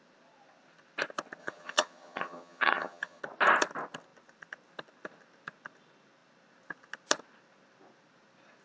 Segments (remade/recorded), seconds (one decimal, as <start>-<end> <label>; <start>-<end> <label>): 0.0-1.4 recorded; 1.4-3.2 remade; 3.2-8.6 recorded